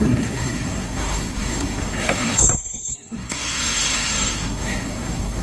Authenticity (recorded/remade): remade